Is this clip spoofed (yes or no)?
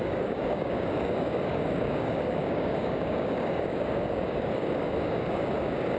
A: yes